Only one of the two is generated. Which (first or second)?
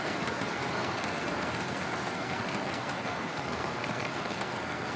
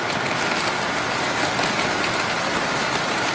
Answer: first